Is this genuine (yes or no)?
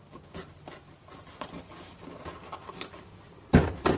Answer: yes